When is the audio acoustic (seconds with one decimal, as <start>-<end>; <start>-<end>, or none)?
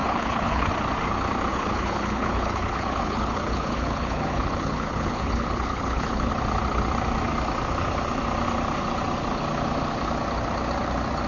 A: 0.7-1.5; 6.3-11.3